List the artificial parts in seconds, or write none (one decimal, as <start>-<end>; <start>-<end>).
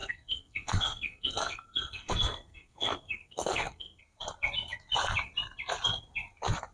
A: 0.0-4.0